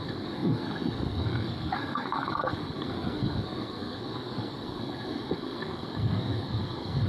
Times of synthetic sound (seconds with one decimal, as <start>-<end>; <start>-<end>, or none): 0.0-7.1